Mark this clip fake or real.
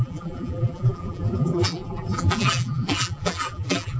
fake